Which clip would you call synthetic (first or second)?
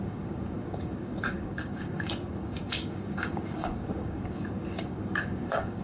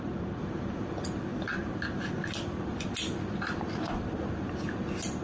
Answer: first